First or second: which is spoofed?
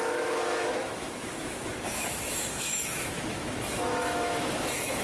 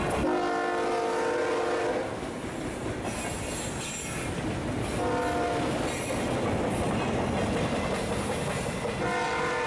first